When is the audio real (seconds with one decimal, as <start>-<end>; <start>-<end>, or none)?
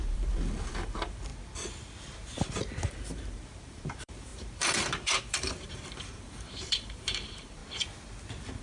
1.3-2.8; 7.6-8.6